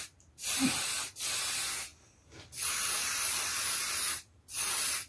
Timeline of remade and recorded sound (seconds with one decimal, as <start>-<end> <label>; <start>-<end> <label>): 0.0-1.9 remade; 1.9-3.3 recorded; 3.3-5.1 remade